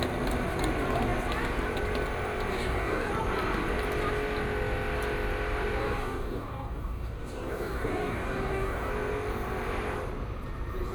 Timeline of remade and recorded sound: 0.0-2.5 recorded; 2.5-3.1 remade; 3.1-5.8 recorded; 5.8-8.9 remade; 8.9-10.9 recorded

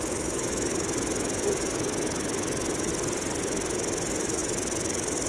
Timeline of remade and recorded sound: 0.0-2.9 remade; 2.9-3.4 recorded; 3.4-5.3 remade

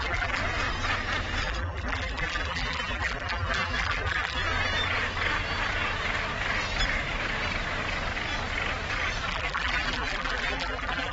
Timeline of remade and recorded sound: 0.0-0.4 remade; 0.4-1.4 recorded; 1.4-4.4 remade; 4.4-9.3 recorded; 9.3-11.1 remade